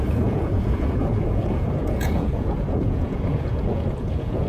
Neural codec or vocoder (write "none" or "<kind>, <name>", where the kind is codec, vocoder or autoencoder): vocoder, Vocos